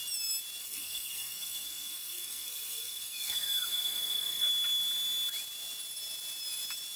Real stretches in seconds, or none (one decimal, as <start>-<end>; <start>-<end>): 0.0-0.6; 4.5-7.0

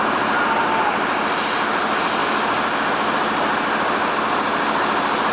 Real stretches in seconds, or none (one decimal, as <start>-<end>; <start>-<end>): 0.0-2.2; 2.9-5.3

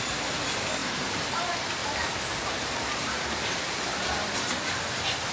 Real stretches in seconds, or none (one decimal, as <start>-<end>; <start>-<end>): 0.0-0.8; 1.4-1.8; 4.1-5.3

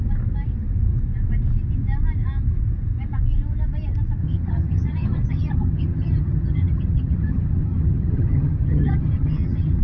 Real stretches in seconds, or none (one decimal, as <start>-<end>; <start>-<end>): 0.0-4.2

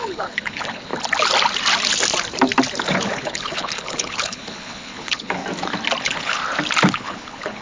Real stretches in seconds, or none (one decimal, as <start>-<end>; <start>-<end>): 0.9-2.8; 5.4-6.0; 6.4-6.9

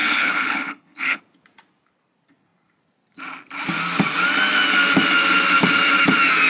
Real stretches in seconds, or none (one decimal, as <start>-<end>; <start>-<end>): 1.2-6.5